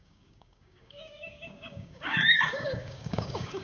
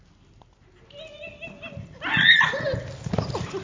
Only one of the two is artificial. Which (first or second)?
first